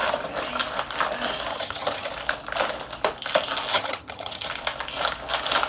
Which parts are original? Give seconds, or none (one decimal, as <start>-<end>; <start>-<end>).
0.0-1.5; 2.1-3.7; 4.5-5.7